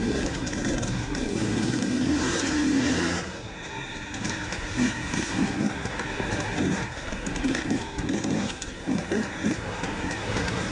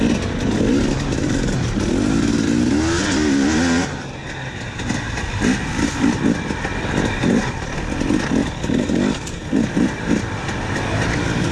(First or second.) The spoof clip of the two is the first